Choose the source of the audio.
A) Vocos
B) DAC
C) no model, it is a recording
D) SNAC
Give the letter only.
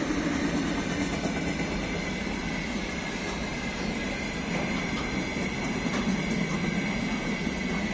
C